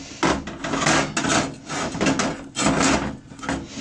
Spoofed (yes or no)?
no